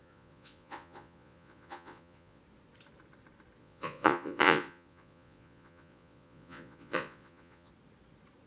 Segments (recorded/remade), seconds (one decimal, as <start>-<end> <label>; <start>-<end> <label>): 0.0-2.4 remade; 2.4-3.6 recorded; 3.6-7.7 remade; 7.7-8.5 recorded